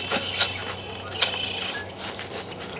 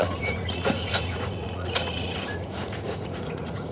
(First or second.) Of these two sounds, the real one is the first